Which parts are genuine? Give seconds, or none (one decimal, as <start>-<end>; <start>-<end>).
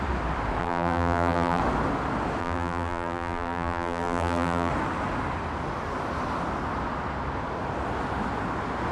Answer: 0.0-0.6; 1.6-2.4; 4.7-8.9